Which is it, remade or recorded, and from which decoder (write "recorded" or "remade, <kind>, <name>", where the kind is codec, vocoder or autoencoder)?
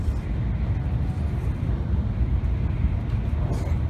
recorded